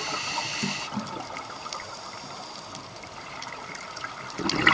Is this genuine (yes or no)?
yes